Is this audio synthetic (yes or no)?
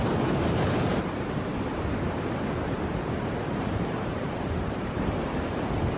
yes